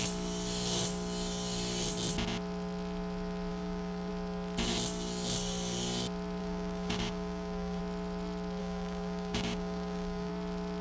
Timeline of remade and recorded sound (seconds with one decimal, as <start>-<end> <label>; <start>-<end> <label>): 0.0-3.5 recorded; 3.5-4.1 remade; 4.1-6.4 recorded; 6.4-7.8 remade; 7.8-8.6 recorded; 8.6-10.3 remade; 10.3-10.8 recorded

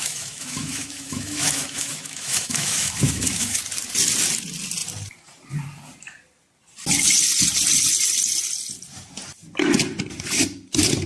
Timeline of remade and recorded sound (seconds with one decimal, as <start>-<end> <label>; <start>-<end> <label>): 0.0-3.6 remade; 3.6-11.1 recorded

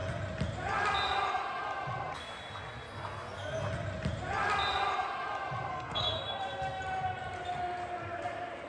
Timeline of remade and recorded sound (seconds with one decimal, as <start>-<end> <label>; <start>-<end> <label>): 0.0-5.7 recorded; 5.7-6.2 remade; 6.2-8.7 recorded

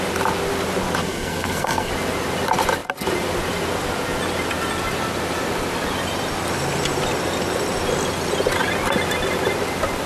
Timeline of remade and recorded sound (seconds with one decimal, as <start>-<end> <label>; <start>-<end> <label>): 0.0-1.0 recorded; 1.0-1.9 remade; 1.9-10.1 recorded

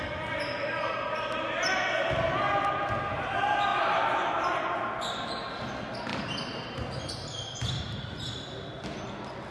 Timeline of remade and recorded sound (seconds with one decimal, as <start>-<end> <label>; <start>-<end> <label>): 0.0-3.7 recorded; 3.7-4.8 remade; 4.8-6.1 recorded; 6.1-7.8 remade; 7.8-9.5 recorded

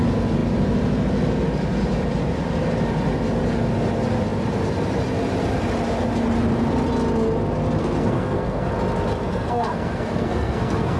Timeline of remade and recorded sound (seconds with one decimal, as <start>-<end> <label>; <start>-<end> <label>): 0.0-7.8 recorded; 7.8-8.7 remade; 8.7-9.3 recorded; 9.3-11.0 remade

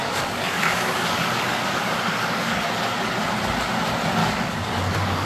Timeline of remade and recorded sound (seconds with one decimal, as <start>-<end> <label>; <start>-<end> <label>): 0.0-2.6 remade; 2.6-4.2 recorded; 4.2-5.3 remade